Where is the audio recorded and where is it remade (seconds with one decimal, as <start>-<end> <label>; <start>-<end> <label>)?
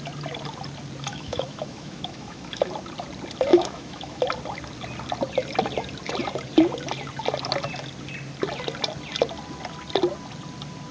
0.0-1.1 recorded; 1.1-2.6 remade; 2.6-3.5 recorded; 3.5-4.2 remade; 4.2-10.9 recorded